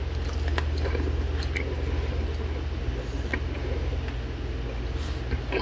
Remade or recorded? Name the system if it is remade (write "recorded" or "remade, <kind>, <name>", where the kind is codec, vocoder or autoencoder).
recorded